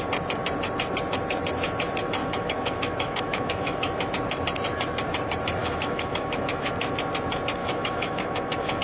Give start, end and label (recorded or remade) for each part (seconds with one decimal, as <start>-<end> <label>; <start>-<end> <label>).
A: 0.0-2.2 recorded; 2.2-4.1 remade; 4.1-5.6 recorded; 5.6-6.7 remade; 6.7-7.6 recorded; 7.6-8.8 remade

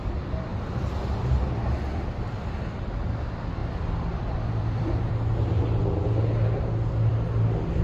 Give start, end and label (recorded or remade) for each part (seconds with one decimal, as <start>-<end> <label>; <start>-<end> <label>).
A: 0.0-0.5 recorded; 0.5-1.4 remade; 1.4-3.6 recorded; 3.6-5.1 remade; 5.1-7.8 recorded

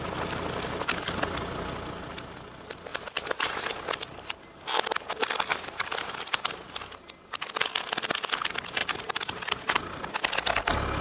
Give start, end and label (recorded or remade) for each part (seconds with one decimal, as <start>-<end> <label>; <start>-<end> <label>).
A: 0.0-2.9 recorded; 2.9-3.9 remade; 3.9-5.5 recorded; 5.5-6.1 remade; 6.1-8.8 recorded; 8.8-10.1 remade; 10.1-11.0 recorded